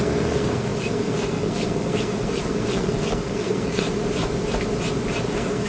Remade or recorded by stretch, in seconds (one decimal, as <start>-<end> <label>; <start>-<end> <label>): 0.0-3.8 remade; 3.8-5.3 recorded; 5.3-5.7 remade